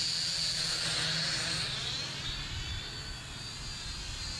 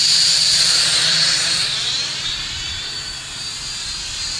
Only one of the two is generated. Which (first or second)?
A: second